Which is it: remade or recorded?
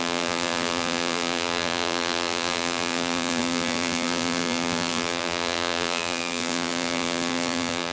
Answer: remade